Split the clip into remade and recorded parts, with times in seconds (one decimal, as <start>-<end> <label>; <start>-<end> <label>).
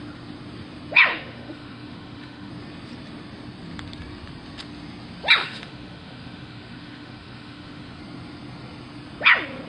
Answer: 0.0-1.1 recorded; 1.1-2.5 remade; 2.5-5.4 recorded; 5.4-8.0 remade; 8.0-9.7 recorded